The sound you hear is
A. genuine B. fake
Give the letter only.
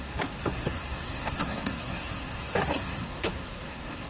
B